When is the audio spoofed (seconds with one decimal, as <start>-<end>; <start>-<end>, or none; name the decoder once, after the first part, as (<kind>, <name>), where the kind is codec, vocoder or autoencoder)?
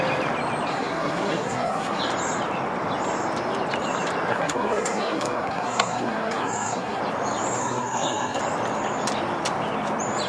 0.7-2.0 (codec, SNAC); 4.3-7.0; 7.6-8.4